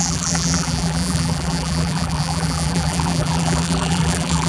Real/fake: fake